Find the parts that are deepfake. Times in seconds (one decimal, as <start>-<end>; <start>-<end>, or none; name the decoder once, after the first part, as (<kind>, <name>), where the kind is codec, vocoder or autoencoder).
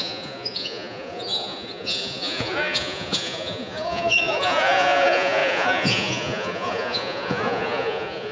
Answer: 0.0-8.3 (vocoder, Vocos)